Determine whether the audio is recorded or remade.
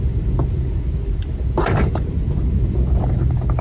recorded